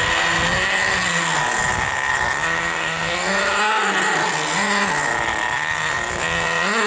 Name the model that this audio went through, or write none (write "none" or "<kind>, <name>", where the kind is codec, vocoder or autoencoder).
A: none